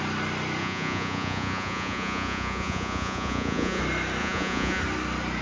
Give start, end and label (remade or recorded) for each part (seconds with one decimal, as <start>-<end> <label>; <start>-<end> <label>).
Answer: 0.0-0.6 recorded; 0.6-3.8 remade; 3.8-4.2 recorded; 4.2-4.8 remade; 4.8-5.4 recorded